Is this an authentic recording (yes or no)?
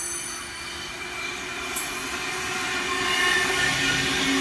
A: yes